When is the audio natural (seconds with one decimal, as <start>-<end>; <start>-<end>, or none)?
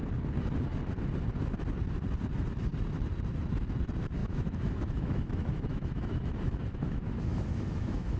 0.0-4.2